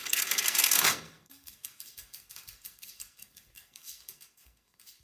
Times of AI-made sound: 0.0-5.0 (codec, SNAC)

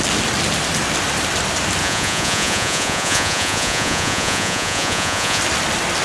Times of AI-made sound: 1.8-5.4 (vocoder, Vocos)

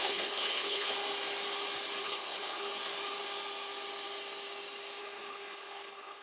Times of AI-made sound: 0.0-0.9 (codec, HILCodec); 2.0-2.7; 5.0-6.2

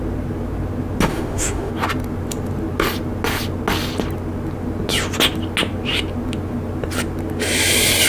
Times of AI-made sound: 1.1-1.7 (autoencoder, DAC-VAE)

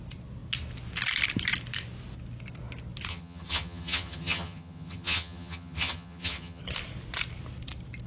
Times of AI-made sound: 3.1-6.6 (vocoder, HiFi-GAN)